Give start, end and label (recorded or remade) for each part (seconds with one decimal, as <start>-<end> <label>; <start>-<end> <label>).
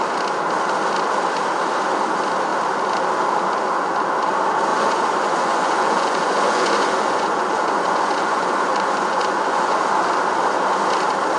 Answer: 0.0-4.7 recorded; 4.7-9.8 remade; 9.8-11.4 recorded